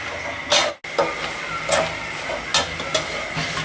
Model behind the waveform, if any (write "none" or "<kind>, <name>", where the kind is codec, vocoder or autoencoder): none